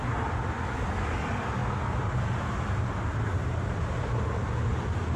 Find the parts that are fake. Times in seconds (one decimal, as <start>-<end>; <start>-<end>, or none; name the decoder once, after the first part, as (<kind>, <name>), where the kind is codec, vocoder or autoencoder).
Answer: 1.6-4.0 (vocoder, BigVGAN v2)